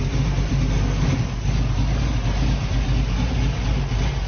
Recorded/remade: recorded